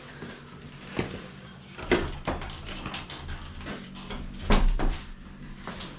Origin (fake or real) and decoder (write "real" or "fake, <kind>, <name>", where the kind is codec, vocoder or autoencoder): fake, vocoder, BigVGAN v2